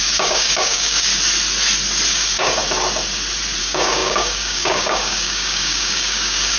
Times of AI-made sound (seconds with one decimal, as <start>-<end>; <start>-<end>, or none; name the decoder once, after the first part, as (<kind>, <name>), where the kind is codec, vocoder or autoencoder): 0.0-1.1 (codec, DAC); 2.1-2.6; 3.6-6.6